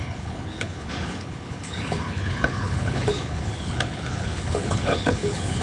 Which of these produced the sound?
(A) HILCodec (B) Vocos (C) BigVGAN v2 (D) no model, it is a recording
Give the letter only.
A